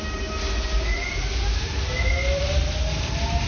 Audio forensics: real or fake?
real